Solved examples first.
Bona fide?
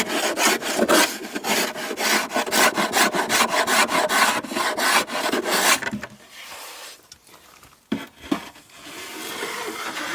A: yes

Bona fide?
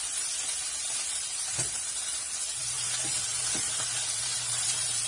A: no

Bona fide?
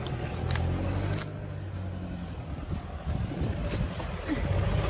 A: yes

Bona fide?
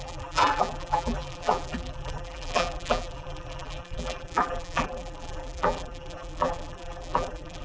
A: no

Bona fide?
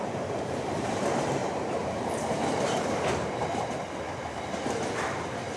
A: no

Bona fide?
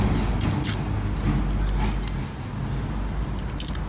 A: yes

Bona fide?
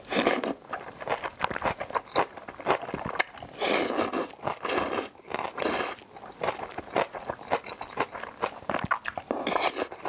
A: yes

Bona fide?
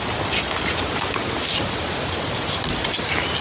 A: yes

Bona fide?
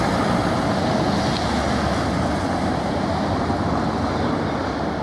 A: yes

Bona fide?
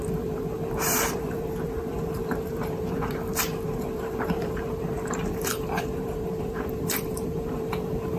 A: no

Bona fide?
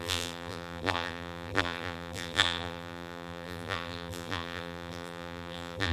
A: no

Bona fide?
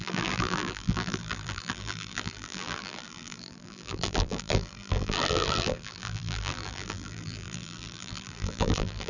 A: no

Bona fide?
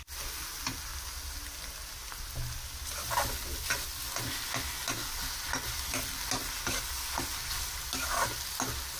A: yes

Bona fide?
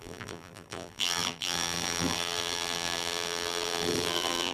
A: no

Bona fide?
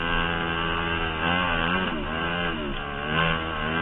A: yes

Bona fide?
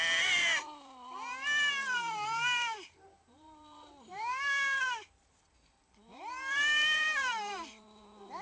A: no